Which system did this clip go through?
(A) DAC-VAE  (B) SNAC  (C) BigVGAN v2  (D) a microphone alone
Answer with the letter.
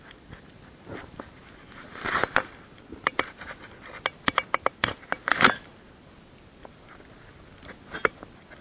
D